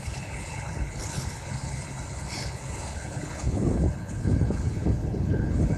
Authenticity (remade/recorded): remade